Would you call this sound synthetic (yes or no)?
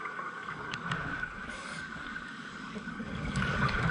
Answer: yes